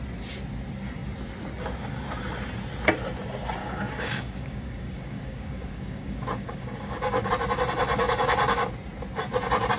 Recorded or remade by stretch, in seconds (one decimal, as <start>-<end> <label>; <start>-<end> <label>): 0.0-3.6 recorded; 3.6-7.3 remade; 7.3-9.8 recorded